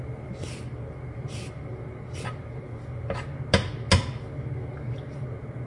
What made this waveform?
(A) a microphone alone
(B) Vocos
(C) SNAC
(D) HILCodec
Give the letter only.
A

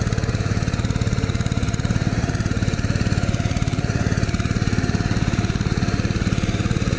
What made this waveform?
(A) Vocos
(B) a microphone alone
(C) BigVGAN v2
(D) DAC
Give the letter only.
A